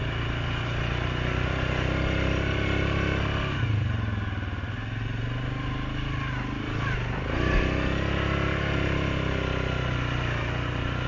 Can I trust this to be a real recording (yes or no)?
yes